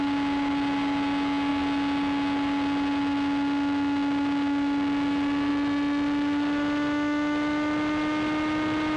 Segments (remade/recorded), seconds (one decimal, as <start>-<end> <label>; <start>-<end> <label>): 0.0-9.0 recorded